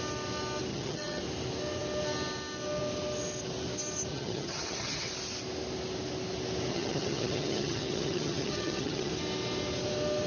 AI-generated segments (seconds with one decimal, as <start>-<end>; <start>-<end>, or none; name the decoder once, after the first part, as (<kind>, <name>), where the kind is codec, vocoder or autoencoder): 0.7-1.2 (vocoder, HiFi-GAN); 4.1-5.1; 6.7-9.1